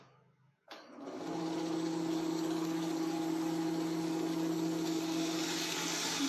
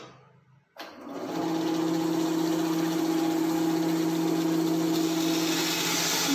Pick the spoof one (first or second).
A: first